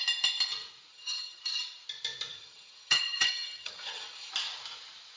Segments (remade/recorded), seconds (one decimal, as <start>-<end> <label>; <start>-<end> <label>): 0.0-0.9 recorded; 0.9-1.4 remade; 1.4-2.3 recorded; 2.3-4.3 remade; 4.3-5.2 recorded

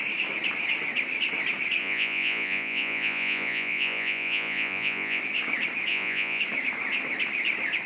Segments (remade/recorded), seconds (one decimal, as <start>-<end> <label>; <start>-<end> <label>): 0.0-1.8 recorded; 1.8-5.2 remade; 5.2-5.9 recorded; 5.9-6.4 remade; 6.4-7.9 recorded

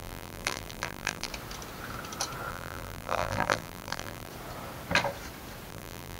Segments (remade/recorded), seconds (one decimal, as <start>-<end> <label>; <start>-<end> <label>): 0.0-1.3 remade; 1.3-2.5 recorded; 2.5-4.3 remade; 4.3-5.7 recorded; 5.7-6.2 remade